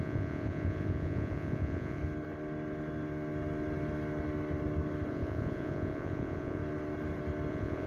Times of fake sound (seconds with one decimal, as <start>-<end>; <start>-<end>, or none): 0.0-2.0; 5.1-6.6; 7.5-7.9